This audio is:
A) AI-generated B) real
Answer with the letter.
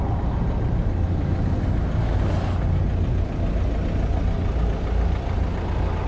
B